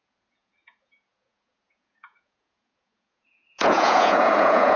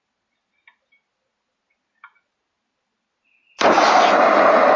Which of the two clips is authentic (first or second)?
second